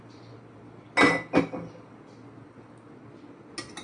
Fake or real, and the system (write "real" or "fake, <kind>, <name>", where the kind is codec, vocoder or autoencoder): real